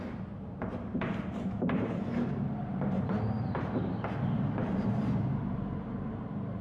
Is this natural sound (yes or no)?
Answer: no